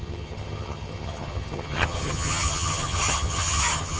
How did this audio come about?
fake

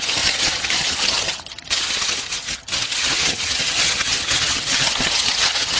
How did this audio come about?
fake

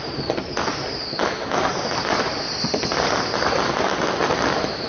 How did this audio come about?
real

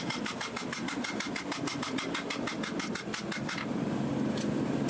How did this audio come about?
real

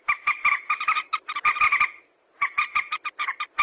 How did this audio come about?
real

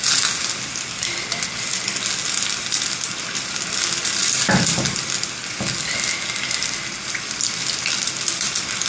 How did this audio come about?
real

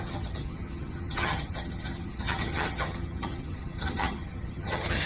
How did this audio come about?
fake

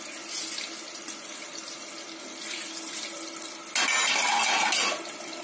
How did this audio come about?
real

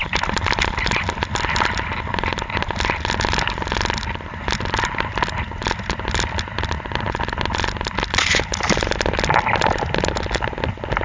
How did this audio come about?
real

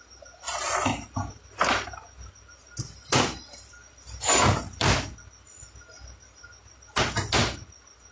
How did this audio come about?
real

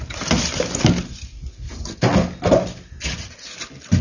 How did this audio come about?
real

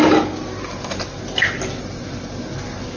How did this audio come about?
real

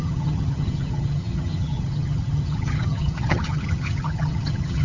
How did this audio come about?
fake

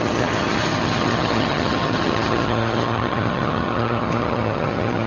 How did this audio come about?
fake